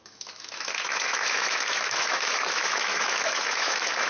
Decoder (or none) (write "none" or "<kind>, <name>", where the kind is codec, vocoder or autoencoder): autoencoder, DAC-VAE